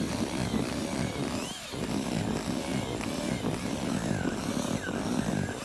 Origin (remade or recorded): recorded